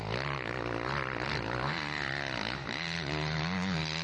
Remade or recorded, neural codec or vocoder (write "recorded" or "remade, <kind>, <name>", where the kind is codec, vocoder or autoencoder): recorded